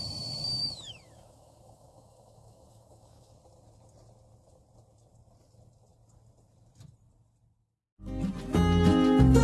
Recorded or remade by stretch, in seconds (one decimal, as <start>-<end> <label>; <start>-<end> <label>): 0.0-0.6 recorded; 0.6-3.3 remade; 3.3-9.4 recorded